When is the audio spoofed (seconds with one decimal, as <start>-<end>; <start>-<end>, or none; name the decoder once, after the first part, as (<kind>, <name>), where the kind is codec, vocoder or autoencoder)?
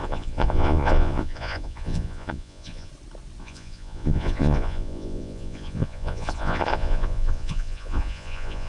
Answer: 0.0-2.9 (vocoder, Vocos); 3.4-8.7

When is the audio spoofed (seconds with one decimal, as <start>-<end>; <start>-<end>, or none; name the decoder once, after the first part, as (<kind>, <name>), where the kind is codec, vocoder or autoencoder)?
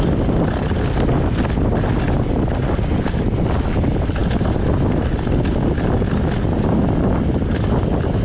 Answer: none